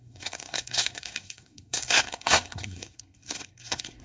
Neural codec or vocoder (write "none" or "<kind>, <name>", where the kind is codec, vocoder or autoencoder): codec, SNAC